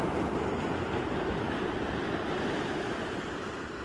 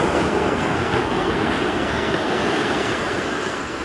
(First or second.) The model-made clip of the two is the second